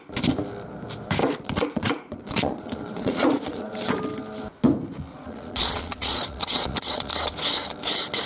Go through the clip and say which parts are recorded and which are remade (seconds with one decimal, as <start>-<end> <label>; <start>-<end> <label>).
0.0-1.2 recorded; 1.2-3.9 remade; 3.9-5.1 recorded; 5.1-7.1 remade; 7.1-8.3 recorded